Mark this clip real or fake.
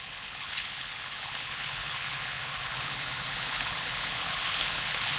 fake